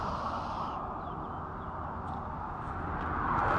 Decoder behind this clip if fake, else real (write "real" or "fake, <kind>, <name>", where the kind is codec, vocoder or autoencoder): real